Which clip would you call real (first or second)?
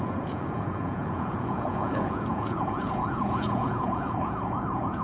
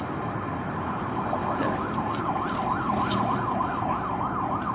second